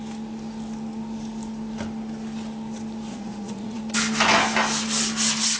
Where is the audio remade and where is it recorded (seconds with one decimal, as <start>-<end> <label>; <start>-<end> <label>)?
0.0-3.1 recorded; 3.1-3.8 remade; 3.8-5.6 recorded